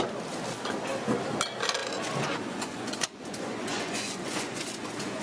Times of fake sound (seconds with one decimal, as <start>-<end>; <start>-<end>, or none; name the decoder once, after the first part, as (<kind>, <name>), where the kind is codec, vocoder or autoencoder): 1.8-5.2 (vocoder, Vocos)